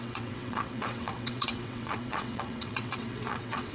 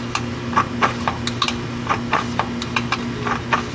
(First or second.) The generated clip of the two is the first